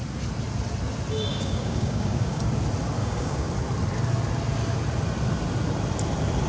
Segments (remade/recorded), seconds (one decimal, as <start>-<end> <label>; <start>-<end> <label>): 0.0-1.3 recorded; 1.3-2.4 remade; 2.4-3.0 recorded; 3.0-3.5 remade; 3.5-6.5 recorded